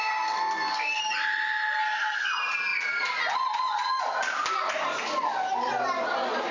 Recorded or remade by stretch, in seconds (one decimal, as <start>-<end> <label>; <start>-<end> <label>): 0.0-1.0 remade; 1.0-1.8 recorded; 1.8-2.3 remade; 2.3-6.5 recorded